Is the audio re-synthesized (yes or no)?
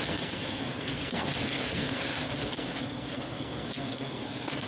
yes